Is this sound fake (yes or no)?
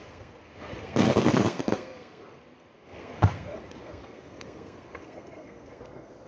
yes